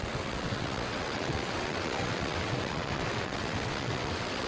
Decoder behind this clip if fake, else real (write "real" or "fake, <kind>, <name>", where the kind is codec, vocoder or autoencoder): fake, vocoder, WaveNeXt